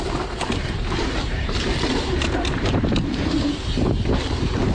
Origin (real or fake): fake